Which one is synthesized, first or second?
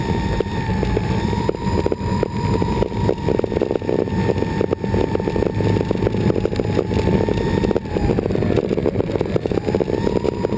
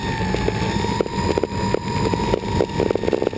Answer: first